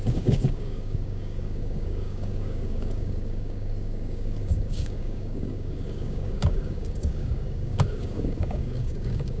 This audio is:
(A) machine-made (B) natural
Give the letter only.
A